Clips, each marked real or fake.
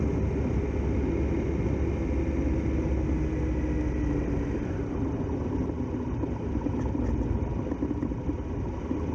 real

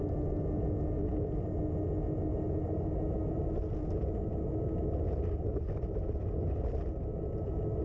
real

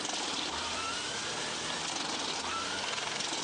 real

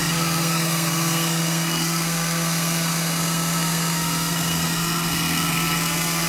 fake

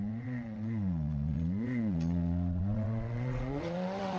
fake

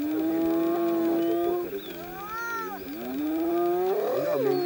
real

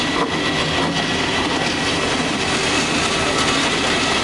real